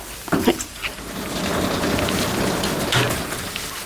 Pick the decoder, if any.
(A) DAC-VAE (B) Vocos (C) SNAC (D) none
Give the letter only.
D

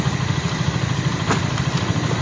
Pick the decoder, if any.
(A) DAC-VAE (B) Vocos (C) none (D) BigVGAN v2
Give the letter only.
C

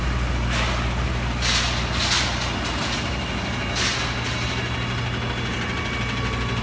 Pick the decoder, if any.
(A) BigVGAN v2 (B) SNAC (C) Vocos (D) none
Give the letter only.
D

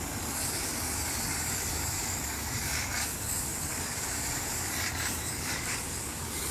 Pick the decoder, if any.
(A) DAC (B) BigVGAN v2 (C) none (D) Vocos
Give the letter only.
A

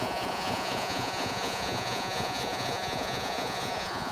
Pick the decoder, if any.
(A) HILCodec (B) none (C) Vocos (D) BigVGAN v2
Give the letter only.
C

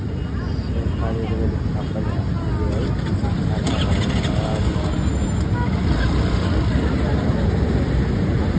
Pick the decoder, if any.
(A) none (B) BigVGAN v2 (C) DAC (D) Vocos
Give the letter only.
A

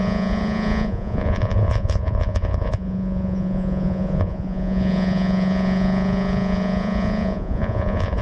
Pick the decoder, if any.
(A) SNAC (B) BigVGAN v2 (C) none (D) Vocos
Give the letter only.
D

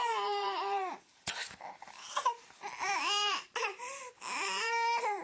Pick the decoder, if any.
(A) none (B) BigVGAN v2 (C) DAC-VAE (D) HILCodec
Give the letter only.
B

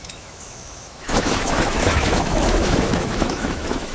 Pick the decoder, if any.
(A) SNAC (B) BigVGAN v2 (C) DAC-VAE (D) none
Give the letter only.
C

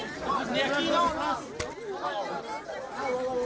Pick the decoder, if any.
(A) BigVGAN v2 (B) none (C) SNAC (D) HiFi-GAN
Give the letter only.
B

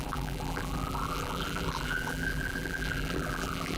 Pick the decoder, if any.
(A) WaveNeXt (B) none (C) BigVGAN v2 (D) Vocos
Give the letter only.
C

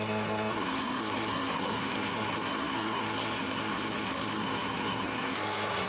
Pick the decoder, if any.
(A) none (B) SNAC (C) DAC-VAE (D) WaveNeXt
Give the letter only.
B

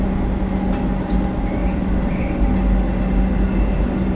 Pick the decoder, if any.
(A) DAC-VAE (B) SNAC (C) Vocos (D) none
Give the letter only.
D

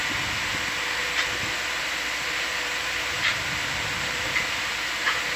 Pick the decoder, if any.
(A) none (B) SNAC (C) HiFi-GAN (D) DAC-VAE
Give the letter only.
A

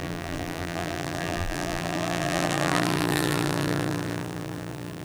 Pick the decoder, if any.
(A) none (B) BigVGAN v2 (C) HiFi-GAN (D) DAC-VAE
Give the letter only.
B